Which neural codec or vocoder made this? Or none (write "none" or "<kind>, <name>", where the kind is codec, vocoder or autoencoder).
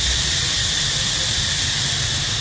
none